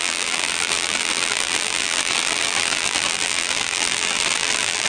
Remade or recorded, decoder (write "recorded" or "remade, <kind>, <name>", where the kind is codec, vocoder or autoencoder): remade, vocoder, BigVGAN v2